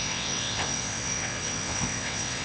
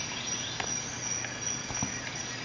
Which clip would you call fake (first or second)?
first